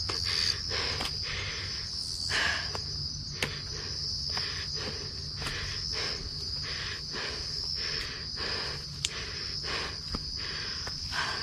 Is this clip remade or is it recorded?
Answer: recorded